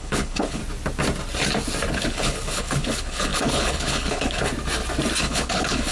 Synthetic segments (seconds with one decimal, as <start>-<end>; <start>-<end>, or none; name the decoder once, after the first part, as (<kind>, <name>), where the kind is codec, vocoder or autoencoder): 0.0-0.6 (codec, HILCodec); 1.9-4.5; 5.2-5.9